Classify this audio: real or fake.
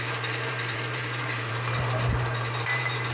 fake